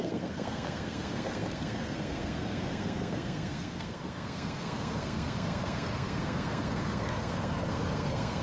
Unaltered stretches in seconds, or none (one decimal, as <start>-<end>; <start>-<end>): none